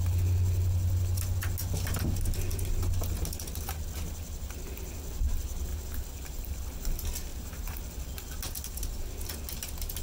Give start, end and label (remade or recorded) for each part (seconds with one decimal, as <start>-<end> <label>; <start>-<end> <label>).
0.0-5.7 recorded; 5.7-6.5 remade; 6.5-7.3 recorded; 7.3-7.8 remade; 7.8-10.0 recorded